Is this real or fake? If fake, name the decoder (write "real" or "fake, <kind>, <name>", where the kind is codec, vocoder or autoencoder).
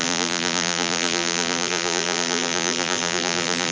fake, vocoder, BigVGAN v2